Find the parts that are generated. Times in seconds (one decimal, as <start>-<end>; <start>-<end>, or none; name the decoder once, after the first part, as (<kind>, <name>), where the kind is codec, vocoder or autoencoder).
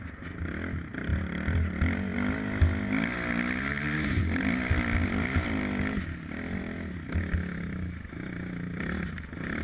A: none